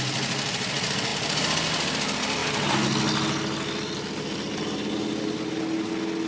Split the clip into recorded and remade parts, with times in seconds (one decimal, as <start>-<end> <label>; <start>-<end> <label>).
0.0-6.3 recorded